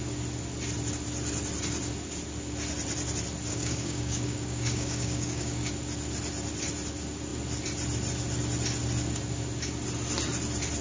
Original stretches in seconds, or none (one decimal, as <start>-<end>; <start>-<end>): 0.0-3.5; 5.7-10.8